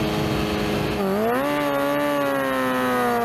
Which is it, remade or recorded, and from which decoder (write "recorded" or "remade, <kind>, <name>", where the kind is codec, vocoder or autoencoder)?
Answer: recorded